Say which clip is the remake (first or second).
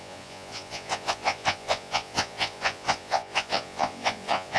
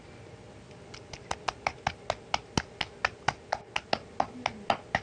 first